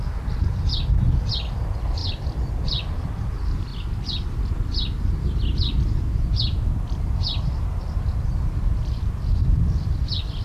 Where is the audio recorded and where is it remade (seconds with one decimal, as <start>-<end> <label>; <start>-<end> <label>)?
0.0-3.7 remade; 3.7-7.8 recorded; 7.8-10.4 remade